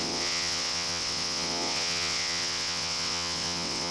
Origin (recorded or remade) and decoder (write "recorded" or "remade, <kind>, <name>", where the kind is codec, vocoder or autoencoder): remade, vocoder, WaveNeXt